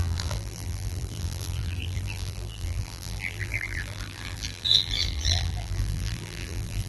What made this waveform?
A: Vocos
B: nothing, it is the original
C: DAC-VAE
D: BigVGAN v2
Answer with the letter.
D